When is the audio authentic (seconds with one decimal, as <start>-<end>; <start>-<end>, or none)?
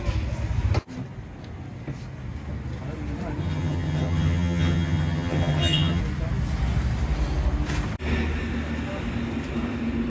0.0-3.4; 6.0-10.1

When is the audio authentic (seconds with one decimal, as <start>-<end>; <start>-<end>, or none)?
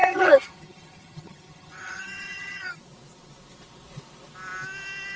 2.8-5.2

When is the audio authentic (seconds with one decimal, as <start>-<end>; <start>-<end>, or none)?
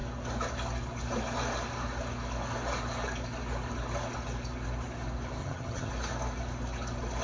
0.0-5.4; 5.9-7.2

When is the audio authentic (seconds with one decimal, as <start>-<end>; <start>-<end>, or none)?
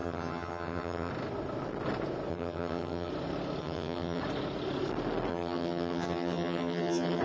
1.1-2.3; 3.1-3.6; 4.2-5.3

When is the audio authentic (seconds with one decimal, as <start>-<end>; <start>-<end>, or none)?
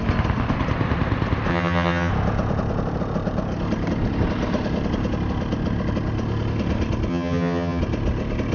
0.0-1.5; 2.1-7.1; 7.8-8.5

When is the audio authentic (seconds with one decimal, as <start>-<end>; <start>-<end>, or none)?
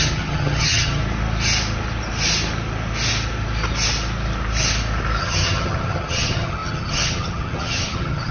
1.0-5.2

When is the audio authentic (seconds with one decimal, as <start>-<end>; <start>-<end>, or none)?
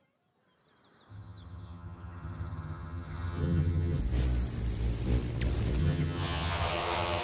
0.0-1.1; 4.0-5.8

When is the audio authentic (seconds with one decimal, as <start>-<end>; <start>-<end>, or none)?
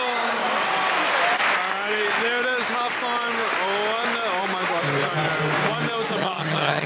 0.0-6.2